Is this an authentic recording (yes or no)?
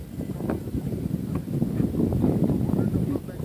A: yes